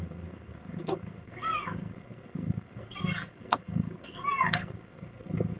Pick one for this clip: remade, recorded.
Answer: remade